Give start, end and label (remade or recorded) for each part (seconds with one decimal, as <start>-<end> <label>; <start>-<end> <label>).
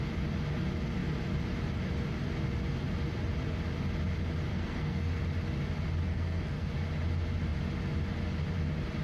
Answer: 0.0-4.5 recorded; 4.5-5.2 remade; 5.2-6.1 recorded; 6.1-6.7 remade; 6.7-9.0 recorded